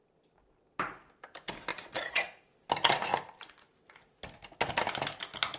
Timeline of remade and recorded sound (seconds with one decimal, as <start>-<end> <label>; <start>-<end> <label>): 0.0-1.7 recorded; 1.7-2.4 remade; 2.4-5.6 recorded